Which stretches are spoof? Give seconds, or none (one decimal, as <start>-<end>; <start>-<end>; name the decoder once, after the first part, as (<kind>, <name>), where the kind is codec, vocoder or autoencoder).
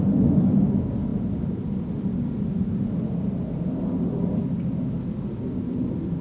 1.1-2.4 (vocoder, BigVGAN v2)